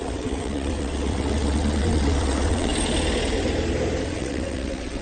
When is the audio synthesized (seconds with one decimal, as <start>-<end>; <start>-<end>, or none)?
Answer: 0.0-2.7; 4.0-5.0